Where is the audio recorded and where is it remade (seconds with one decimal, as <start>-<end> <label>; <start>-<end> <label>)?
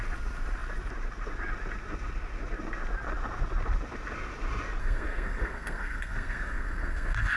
0.0-4.8 recorded; 4.8-7.4 remade